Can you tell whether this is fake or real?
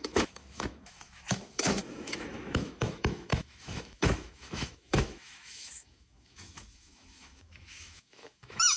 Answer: fake